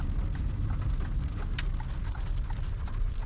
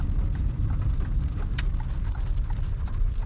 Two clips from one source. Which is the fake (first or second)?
second